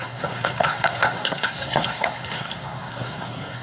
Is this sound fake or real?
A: fake